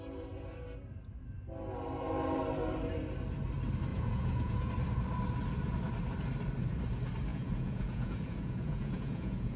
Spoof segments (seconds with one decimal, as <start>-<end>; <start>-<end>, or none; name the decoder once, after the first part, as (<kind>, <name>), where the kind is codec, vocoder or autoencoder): 3.9-4.7 (vocoder, Vocos); 7.3-9.6